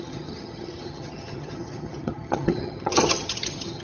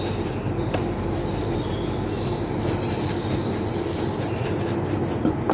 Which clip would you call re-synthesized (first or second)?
first